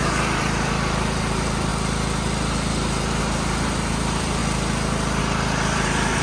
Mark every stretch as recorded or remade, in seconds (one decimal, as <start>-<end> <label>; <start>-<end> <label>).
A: 0.0-1.7 remade; 1.7-3.2 recorded; 3.2-4.4 remade; 4.4-5.2 recorded; 5.2-6.2 remade